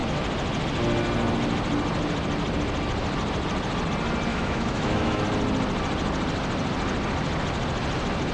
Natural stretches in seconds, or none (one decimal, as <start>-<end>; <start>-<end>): 0.0-4.3; 5.2-8.3